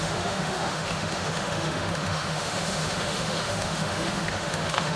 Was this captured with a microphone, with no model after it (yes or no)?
no